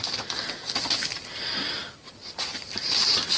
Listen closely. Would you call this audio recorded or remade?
recorded